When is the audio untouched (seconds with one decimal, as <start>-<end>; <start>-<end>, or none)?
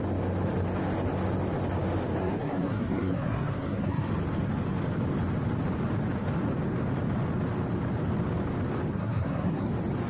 0.0-2.2; 4.1-8.9; 9.7-10.1